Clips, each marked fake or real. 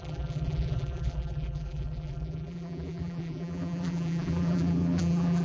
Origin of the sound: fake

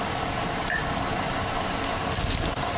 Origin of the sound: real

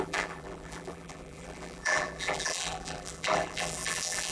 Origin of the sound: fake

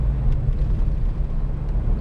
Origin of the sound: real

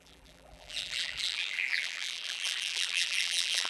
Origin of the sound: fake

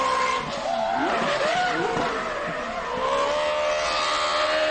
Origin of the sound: real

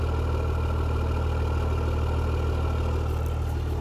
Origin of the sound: real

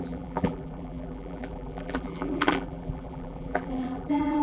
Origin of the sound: fake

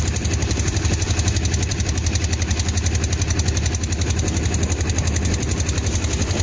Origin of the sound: fake